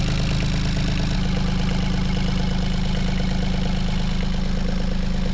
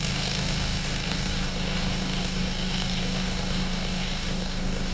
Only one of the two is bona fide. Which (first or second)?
first